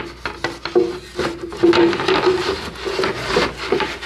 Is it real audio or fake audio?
real